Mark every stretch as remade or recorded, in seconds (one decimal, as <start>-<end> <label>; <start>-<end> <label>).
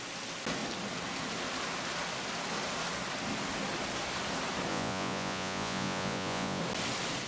0.0-4.7 recorded; 4.7-6.6 remade; 6.6-7.3 recorded